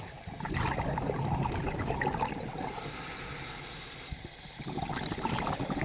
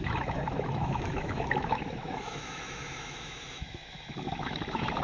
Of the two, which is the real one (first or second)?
first